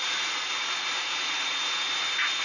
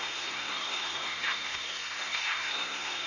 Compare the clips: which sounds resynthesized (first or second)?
second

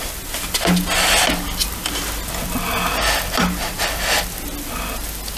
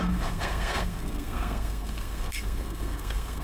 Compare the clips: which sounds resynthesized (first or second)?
second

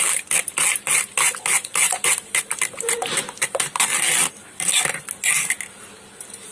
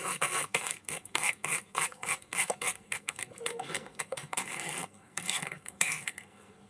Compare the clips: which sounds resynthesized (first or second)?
second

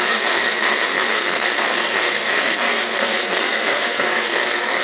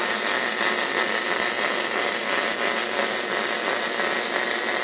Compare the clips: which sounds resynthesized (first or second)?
first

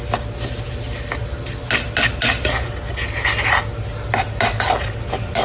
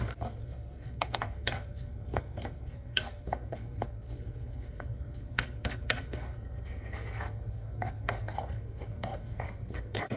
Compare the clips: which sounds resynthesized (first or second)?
second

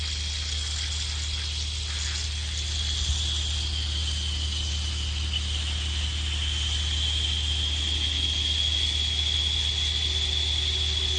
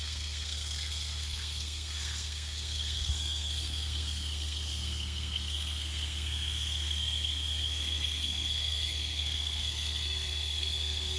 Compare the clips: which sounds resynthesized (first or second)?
second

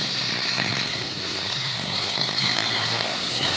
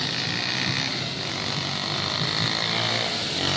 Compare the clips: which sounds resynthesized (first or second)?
first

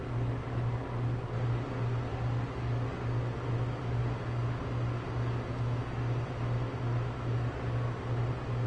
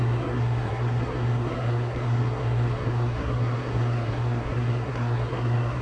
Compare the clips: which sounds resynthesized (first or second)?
second